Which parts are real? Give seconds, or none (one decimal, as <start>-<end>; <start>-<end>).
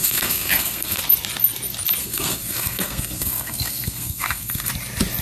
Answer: 1.0-2.0; 4.7-5.2